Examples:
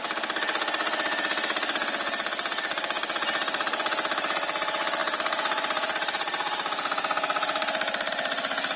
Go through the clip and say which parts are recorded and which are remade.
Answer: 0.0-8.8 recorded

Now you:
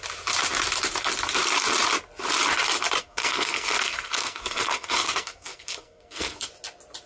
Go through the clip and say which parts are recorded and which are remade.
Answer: 0.0-3.0 recorded; 3.0-6.5 remade; 6.5-7.1 recorded

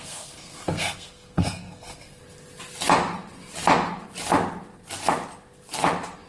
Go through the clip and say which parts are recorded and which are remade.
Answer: 0.0-2.2 remade; 2.2-6.3 recorded

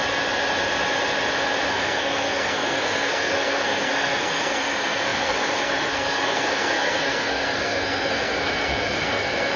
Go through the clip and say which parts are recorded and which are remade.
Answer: 0.0-1.7 recorded; 1.7-9.6 remade

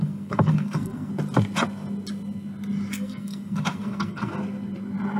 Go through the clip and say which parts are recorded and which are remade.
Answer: 0.0-1.1 remade; 1.1-2.9 recorded; 2.9-4.3 remade; 4.3-5.2 recorded

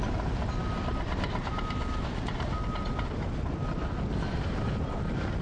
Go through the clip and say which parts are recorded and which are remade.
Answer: 0.0-5.4 recorded

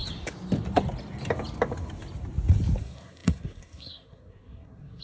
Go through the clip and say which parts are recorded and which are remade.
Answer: 0.0-2.8 recorded; 2.8-5.0 remade

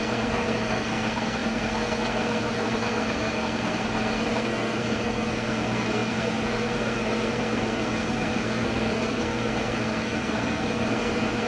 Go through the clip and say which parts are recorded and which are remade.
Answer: 0.0-11.5 remade